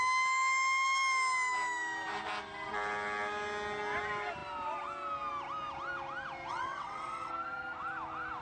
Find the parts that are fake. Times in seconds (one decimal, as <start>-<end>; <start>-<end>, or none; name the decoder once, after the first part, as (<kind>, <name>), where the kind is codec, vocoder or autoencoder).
6.5-7.3 (vocoder, WaveNeXt)